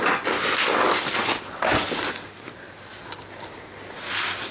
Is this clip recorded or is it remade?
recorded